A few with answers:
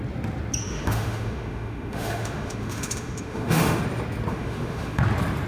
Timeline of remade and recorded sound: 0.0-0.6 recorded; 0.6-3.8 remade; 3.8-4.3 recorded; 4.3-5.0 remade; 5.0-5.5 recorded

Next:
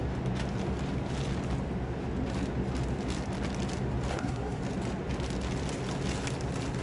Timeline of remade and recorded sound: 0.0-4.1 recorded; 4.1-4.6 remade; 4.6-6.8 recorded

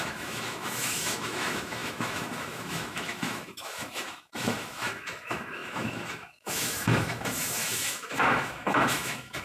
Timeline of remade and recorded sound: 0.0-9.4 remade

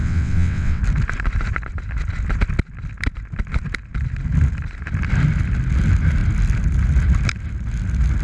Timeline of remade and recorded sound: 0.0-0.8 remade; 0.8-8.2 recorded

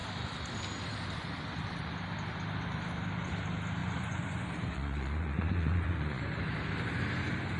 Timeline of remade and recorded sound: 0.0-3.8 recorded; 3.8-6.2 remade; 6.2-7.6 recorded

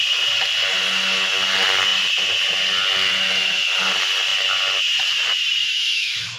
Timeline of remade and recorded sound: 0.0-5.6 recorded; 5.6-6.4 remade

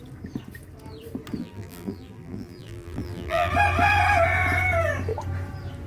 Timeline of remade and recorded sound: 0.0-1.4 recorded; 1.4-3.5 remade; 3.5-5.9 recorded

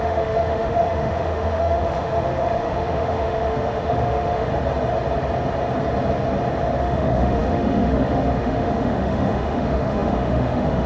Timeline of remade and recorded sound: 0.0-4.5 remade; 4.5-6.8 recorded; 6.8-10.9 remade